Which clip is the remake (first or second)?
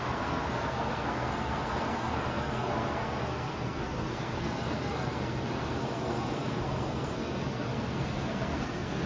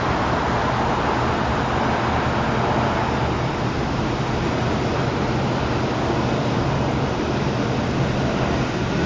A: first